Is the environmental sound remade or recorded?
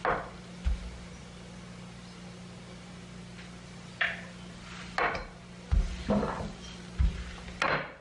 recorded